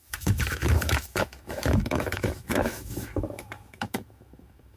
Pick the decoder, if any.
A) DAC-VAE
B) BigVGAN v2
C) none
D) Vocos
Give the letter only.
A